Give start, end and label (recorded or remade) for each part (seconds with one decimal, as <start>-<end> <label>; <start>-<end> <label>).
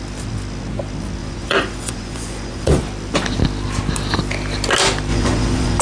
0.0-1.2 recorded; 1.2-2.8 remade; 2.8-5.1 recorded; 5.1-5.8 remade